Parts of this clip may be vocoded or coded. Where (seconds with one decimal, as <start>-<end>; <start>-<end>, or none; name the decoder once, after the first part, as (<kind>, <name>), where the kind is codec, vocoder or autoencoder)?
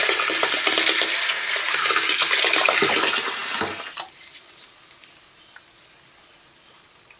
none